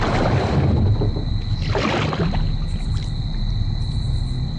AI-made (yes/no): no